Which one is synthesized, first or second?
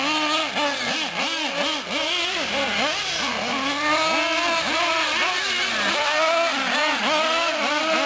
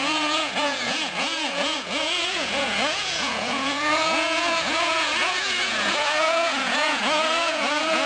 second